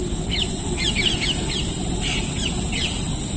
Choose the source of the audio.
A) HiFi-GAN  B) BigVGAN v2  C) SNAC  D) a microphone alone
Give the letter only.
D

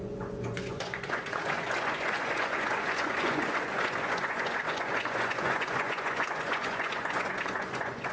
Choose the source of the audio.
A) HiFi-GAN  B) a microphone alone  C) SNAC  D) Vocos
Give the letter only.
D